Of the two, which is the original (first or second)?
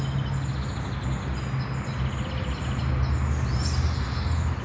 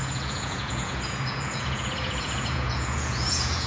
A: first